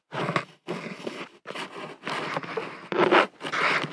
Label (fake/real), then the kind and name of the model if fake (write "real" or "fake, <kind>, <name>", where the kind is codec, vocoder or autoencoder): real